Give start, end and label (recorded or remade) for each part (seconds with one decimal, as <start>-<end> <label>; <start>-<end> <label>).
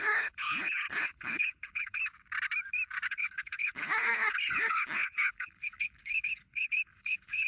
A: 0.0-2.0 remade; 2.0-3.1 recorded; 3.1-7.5 remade